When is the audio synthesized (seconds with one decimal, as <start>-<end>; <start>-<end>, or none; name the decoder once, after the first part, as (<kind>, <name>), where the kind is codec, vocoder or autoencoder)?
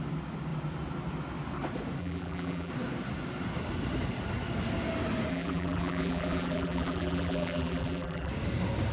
2.0-2.7 (vocoder, BigVGAN v2); 5.3-8.3